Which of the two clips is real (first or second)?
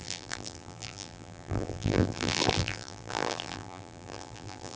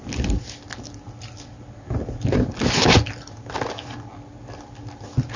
second